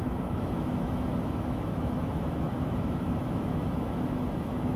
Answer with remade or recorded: remade